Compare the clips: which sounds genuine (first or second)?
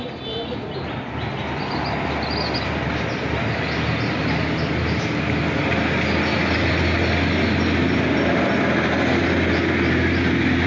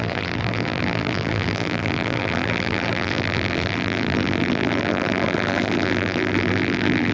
first